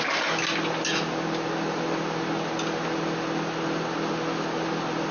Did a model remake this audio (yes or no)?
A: no